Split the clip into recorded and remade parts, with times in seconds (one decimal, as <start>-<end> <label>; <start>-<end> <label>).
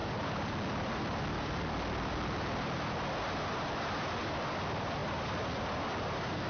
0.0-6.5 remade